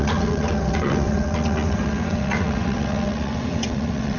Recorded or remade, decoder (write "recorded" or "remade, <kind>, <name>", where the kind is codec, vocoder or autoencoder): remade, vocoder, WaveNeXt